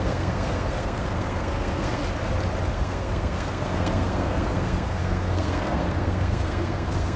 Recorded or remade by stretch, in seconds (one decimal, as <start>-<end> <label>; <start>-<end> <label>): 0.0-2.0 remade; 2.0-2.7 recorded; 2.7-7.2 remade

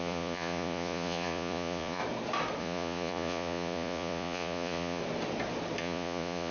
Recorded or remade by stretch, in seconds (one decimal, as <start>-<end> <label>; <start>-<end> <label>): 0.0-2.0 remade; 2.0-2.6 recorded; 2.6-5.0 remade; 5.0-5.8 recorded; 5.8-6.5 remade

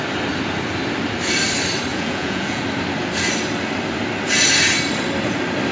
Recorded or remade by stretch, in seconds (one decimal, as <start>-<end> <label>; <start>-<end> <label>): 0.0-1.9 recorded; 1.9-2.6 remade; 2.6-5.7 recorded

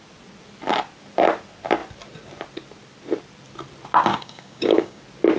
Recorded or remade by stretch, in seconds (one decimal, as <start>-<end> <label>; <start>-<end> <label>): 0.0-4.1 recorded; 4.1-5.0 remade; 5.0-5.4 recorded

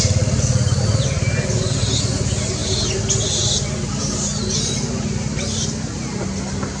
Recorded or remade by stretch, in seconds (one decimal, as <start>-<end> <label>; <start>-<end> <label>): 0.0-6.8 recorded

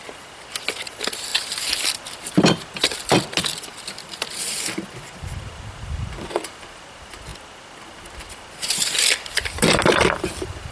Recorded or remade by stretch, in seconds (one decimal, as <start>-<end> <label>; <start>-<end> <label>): 0.0-10.7 recorded

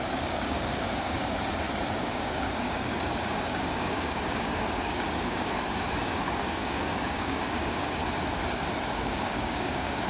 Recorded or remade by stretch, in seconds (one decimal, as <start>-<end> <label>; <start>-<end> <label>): 0.0-1.2 remade; 1.2-2.0 recorded; 2.0-8.0 remade; 8.0-8.9 recorded; 8.9-10.1 remade

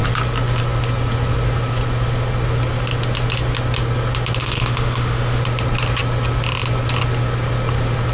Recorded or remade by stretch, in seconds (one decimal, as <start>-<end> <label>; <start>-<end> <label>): 0.0-4.4 recorded; 4.4-5.4 remade; 5.4-8.1 recorded